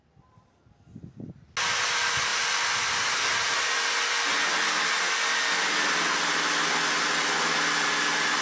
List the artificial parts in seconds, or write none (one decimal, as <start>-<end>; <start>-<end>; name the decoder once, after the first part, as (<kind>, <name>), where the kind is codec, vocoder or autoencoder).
none